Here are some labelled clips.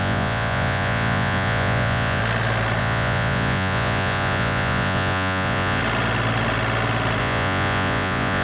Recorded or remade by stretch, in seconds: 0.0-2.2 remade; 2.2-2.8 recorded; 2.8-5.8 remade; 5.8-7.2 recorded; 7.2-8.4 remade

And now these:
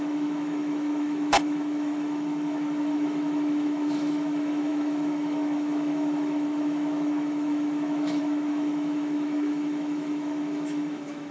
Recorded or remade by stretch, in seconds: 0.0-11.3 remade

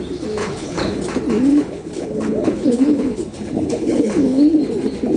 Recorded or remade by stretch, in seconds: 0.0-0.4 recorded; 0.4-1.0 remade; 1.0-1.5 recorded; 1.5-4.6 remade; 4.6-5.2 recorded

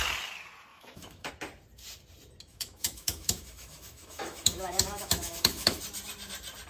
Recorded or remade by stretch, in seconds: 0.0-0.7 recorded; 0.7-1.3 remade; 1.3-2.5 recorded; 2.5-5.8 remade; 5.8-6.7 recorded